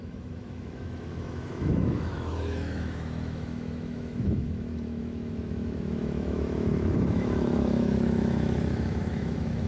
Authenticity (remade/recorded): remade